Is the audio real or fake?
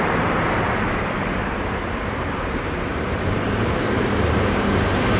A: fake